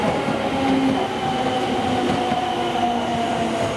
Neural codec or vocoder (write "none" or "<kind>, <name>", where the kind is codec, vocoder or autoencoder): none